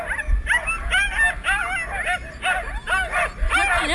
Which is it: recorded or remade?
recorded